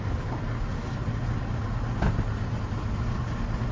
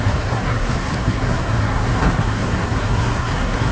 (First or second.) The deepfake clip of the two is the second